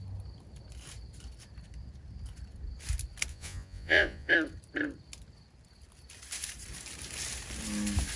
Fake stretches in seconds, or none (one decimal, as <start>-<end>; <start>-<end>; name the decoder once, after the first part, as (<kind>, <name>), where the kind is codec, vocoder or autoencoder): 3.3-4.3 (vocoder, Vocos)